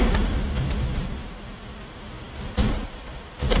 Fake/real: real